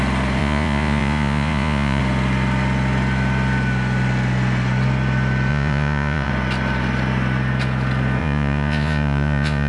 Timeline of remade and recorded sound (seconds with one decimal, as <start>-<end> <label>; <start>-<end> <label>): 0.0-0.4 recorded; 0.4-2.0 remade; 2.0-5.5 recorded; 5.5-6.3 remade; 6.3-8.2 recorded; 8.2-9.7 remade